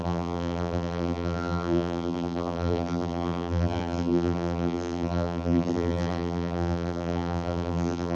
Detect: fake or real fake